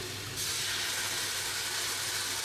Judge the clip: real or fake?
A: real